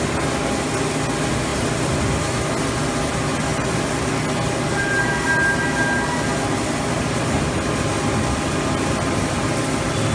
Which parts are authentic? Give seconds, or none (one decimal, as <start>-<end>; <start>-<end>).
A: 0.0-10.1